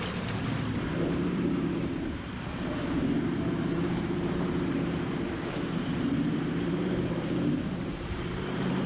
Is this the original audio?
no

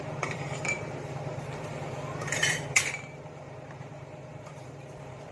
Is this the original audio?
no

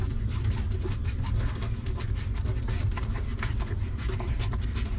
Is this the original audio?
yes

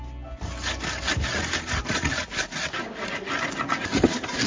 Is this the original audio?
yes